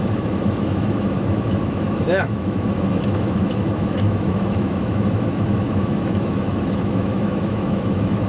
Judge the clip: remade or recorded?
remade